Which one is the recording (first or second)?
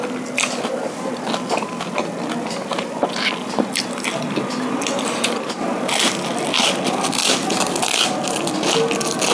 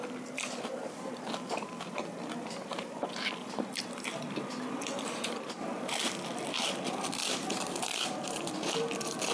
first